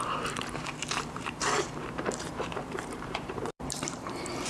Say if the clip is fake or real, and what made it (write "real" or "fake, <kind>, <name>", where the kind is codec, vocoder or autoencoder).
fake, vocoder, BigVGAN v2